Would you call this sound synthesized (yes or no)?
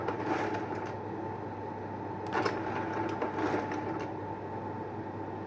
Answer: no